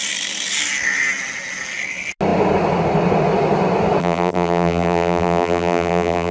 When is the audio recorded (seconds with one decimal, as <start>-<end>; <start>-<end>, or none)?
0.0-4.0